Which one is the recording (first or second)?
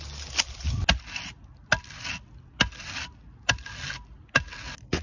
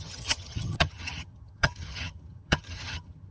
first